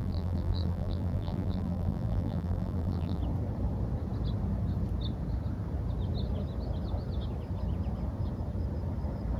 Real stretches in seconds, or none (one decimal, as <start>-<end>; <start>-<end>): 3.2-9.4